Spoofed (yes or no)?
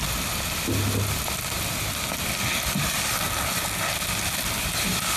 no